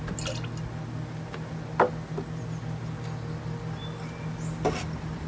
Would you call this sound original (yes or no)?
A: yes